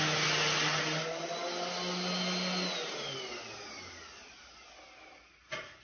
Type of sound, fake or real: real